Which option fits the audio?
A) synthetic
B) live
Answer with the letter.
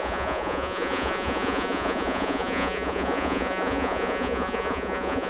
A